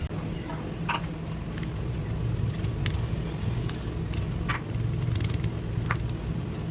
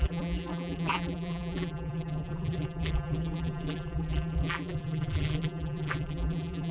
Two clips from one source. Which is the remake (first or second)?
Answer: second